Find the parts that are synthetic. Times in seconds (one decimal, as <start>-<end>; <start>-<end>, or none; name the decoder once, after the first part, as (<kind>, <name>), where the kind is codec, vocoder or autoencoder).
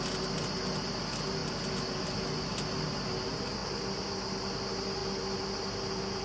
none